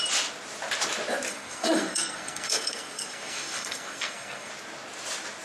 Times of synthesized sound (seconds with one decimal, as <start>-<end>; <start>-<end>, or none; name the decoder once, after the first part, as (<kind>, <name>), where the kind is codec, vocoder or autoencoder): 1.3-4.5 (codec, SNAC)